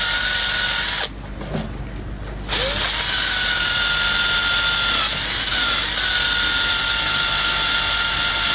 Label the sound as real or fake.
real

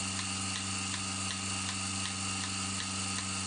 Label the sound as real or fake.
real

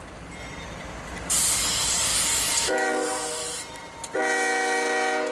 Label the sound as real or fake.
real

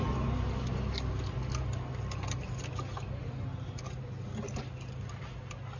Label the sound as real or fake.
real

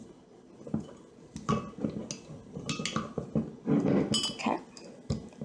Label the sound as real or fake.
real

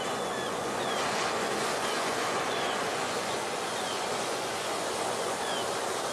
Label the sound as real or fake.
fake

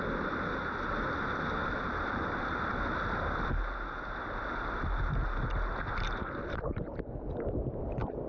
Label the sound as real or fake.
real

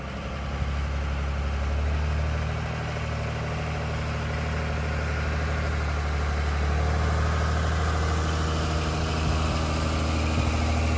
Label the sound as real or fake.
real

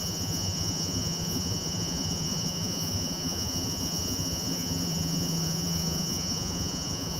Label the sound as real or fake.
fake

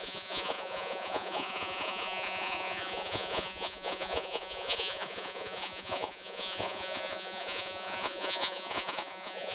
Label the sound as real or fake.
fake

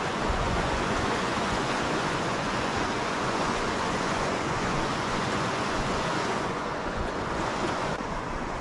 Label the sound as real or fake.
fake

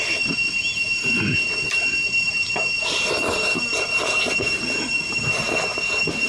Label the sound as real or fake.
real